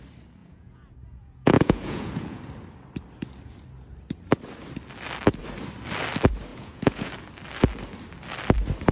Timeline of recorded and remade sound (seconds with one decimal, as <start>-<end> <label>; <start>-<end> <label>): 0.0-0.4 recorded; 0.4-2.4 remade; 2.4-6.5 recorded; 6.5-7.1 remade; 7.1-8.9 recorded